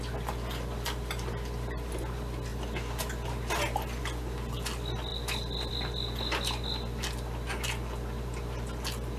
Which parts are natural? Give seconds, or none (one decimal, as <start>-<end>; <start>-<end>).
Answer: 0.0-5.1; 5.7-9.2